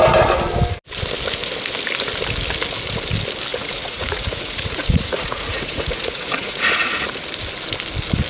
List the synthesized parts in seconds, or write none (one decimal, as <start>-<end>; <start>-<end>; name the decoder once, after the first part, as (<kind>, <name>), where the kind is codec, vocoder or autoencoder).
3.5-7.0 (vocoder, Vocos)